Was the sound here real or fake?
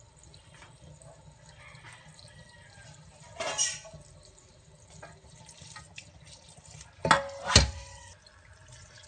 real